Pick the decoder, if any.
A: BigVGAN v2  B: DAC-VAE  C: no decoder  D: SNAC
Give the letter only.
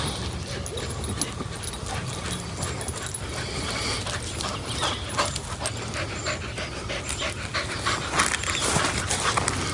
C